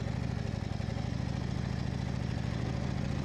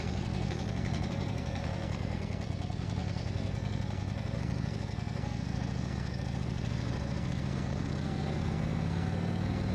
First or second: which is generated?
second